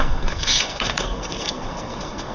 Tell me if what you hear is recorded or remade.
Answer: remade